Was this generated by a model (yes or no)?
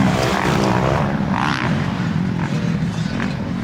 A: yes